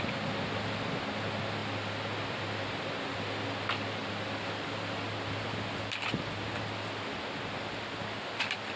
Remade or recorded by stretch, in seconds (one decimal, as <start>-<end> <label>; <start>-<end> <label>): 0.0-8.8 recorded